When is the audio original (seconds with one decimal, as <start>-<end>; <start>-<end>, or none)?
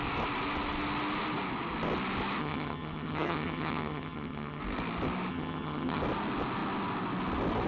0.0-2.4; 4.6-5.3; 6.0-7.7